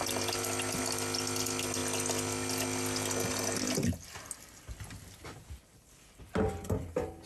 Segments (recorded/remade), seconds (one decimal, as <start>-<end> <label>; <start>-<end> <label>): 0.0-7.3 recorded